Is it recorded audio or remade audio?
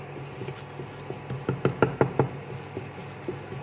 recorded